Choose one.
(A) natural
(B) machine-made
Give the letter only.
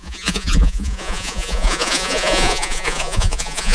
B